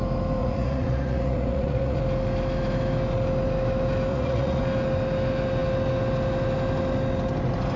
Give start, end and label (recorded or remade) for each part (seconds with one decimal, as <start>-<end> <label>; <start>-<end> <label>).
0.0-0.4 recorded; 0.4-2.0 remade; 2.0-4.1 recorded; 4.1-4.6 remade; 4.6-7.8 recorded